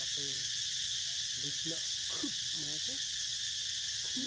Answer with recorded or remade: remade